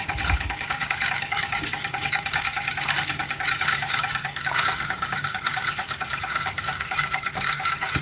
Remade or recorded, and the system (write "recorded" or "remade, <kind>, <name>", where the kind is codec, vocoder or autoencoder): remade, codec, DAC